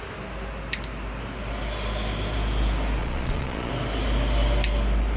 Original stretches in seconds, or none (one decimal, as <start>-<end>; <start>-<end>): 0.0-3.0; 3.7-5.2